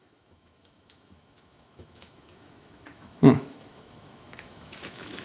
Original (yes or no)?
no